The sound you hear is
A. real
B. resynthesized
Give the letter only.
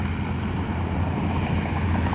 A